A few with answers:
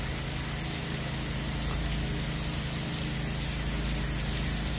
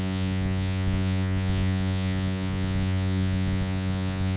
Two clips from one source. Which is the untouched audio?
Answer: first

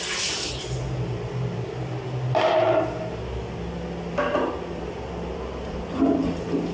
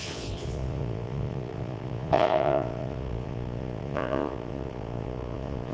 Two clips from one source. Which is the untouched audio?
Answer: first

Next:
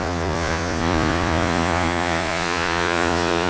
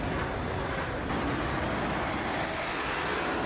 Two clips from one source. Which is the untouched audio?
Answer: second